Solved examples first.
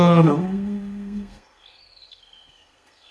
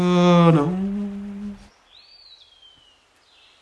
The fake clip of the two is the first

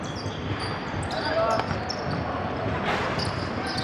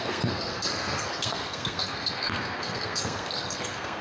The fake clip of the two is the second